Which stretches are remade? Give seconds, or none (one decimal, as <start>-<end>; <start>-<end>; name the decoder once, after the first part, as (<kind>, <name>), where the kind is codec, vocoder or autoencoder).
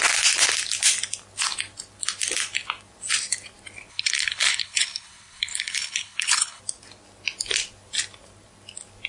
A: 3.9-6.6 (codec, HILCodec)